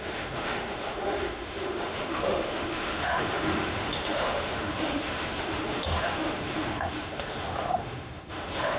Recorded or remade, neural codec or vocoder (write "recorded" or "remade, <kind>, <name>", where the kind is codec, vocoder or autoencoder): remade, autoencoder, DAC-VAE